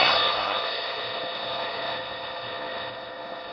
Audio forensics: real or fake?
fake